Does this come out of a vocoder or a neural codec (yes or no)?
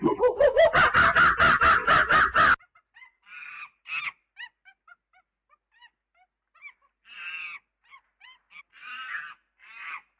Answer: no